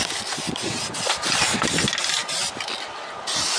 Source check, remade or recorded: recorded